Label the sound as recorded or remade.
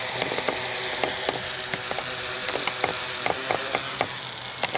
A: recorded